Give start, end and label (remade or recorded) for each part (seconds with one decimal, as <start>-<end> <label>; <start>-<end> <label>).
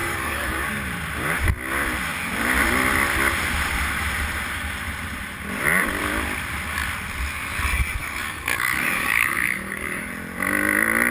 0.0-0.6 remade; 0.6-8.0 recorded; 8.0-10.1 remade; 10.1-11.1 recorded